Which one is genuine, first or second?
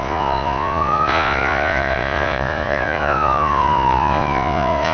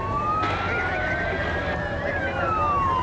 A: second